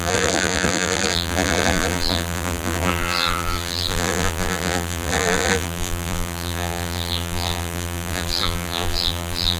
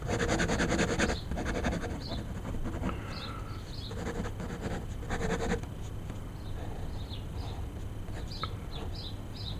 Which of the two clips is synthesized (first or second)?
first